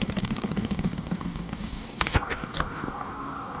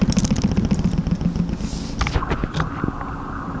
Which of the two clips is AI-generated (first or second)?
first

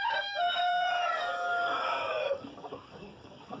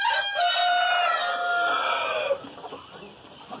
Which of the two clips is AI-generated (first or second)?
first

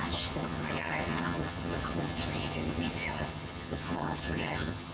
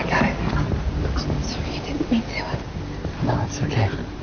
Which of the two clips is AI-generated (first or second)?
first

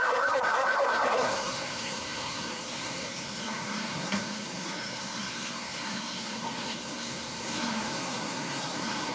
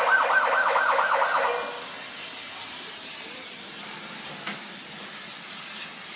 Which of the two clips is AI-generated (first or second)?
first